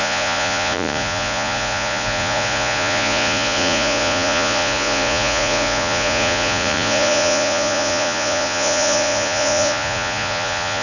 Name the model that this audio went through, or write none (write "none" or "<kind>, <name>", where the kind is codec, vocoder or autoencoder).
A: vocoder, Vocos